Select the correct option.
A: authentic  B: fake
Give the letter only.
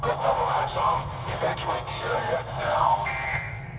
B